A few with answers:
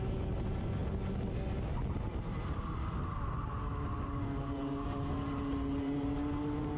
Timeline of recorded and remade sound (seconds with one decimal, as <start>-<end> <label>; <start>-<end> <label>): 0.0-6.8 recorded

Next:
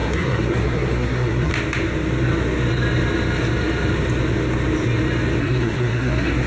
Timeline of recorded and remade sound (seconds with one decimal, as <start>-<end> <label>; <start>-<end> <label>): 0.0-1.5 remade; 1.5-5.4 recorded; 5.4-6.5 remade

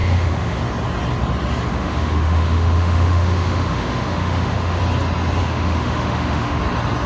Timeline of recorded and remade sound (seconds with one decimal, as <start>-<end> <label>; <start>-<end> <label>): 0.0-0.6 remade; 0.6-1.7 recorded; 1.7-4.8 remade; 4.8-5.4 recorded; 5.4-6.6 remade; 6.6-7.1 recorded

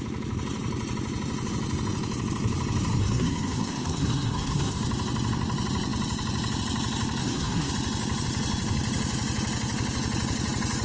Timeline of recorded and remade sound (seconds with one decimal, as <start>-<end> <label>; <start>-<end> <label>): 0.0-3.0 recorded; 3.0-4.8 remade; 4.8-7.2 recorded; 7.2-7.7 remade; 7.7-10.8 recorded

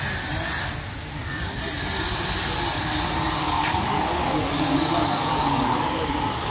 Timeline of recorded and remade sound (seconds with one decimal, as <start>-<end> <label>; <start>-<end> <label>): 0.0-3.4 recorded; 3.4-6.5 remade

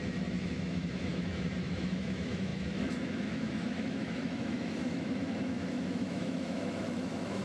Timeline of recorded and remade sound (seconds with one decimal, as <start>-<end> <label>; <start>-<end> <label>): 0.0-7.4 remade

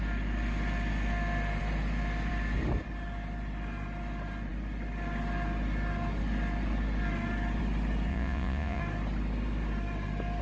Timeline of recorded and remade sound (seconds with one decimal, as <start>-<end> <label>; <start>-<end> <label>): 0.0-8.1 recorded; 8.1-8.8 remade; 8.8-10.4 recorded

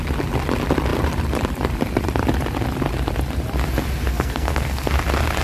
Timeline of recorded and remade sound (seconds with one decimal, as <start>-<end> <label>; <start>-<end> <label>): 0.0-4.1 recorded; 4.1-4.9 remade; 4.9-5.4 recorded